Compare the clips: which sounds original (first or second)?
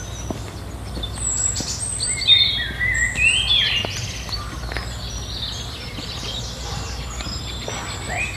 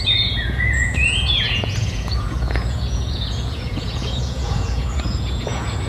first